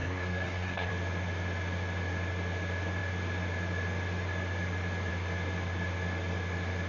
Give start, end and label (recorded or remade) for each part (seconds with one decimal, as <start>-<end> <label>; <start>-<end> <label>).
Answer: 0.0-0.9 remade; 0.9-6.9 recorded